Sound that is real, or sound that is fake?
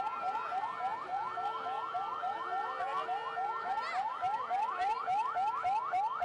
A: real